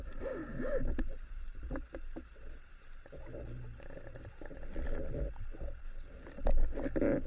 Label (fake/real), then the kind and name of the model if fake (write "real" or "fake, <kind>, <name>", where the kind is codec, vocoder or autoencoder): real